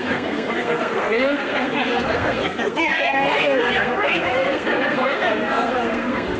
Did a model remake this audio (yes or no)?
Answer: yes